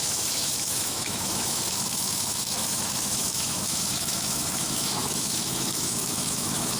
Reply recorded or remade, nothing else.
remade